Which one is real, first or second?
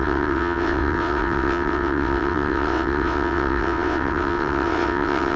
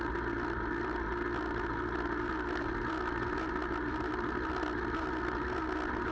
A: second